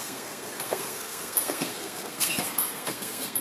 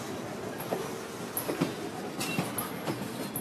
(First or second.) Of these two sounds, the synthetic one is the first